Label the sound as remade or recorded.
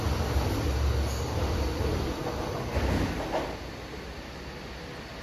recorded